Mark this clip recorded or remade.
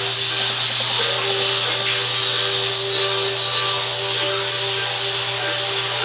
recorded